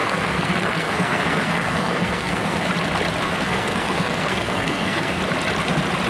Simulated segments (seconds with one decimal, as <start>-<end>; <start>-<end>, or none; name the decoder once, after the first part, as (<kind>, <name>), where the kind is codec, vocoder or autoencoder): 0.0-2.7 (codec, SNAC); 3.2-5.2